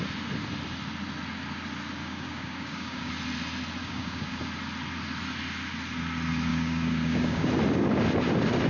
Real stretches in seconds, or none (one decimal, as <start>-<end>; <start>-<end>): 0.0-2.0; 3.1-3.8; 4.4-6.5; 7.5-8.7